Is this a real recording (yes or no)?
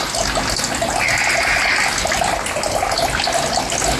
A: yes